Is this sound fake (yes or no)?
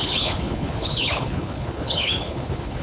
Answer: yes